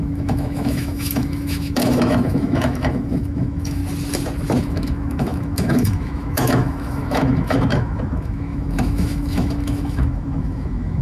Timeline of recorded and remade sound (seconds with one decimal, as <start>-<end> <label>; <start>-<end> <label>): 0.0-3.8 remade; 3.8-4.6 recorded; 4.6-11.0 remade